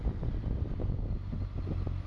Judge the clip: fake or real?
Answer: real